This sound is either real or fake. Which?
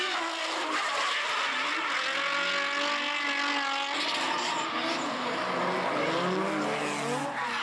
real